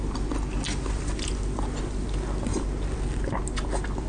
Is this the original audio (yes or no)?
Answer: yes